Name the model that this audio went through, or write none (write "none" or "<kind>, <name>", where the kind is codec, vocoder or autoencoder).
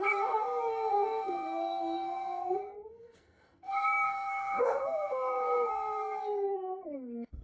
codec, SNAC